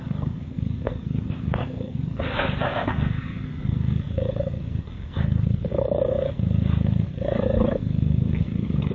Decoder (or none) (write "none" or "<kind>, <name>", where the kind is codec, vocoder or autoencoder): codec, SNAC